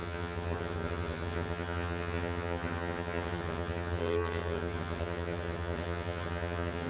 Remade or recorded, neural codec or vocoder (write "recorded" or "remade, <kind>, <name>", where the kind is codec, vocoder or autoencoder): remade, vocoder, HiFi-GAN